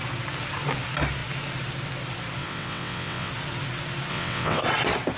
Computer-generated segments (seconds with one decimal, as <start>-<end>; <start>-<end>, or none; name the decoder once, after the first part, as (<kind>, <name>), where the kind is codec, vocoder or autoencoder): 2.4-3.3 (vocoder, WaveNeXt); 4.1-4.6